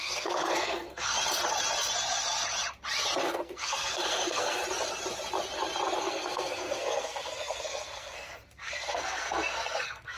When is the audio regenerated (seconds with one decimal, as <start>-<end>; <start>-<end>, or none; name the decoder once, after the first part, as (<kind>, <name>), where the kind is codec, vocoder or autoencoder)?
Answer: 0.0-1.1 (codec, SNAC); 3.2-4.6; 6.0-10.2